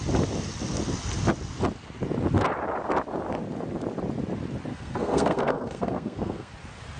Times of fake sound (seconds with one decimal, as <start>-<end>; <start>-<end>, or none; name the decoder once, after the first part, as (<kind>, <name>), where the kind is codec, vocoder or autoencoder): 4.7-6.5 (codec, SNAC)